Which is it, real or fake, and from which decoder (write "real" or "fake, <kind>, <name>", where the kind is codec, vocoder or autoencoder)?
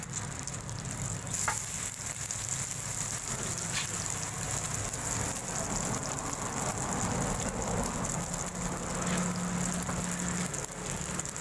real